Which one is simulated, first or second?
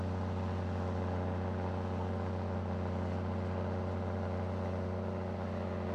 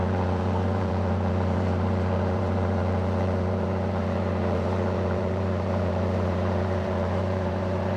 second